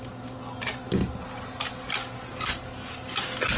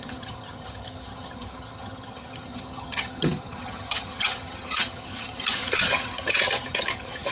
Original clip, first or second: first